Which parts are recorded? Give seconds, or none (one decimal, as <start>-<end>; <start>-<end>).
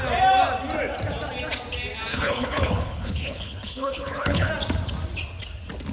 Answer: 0.0-2.1; 4.5-5.9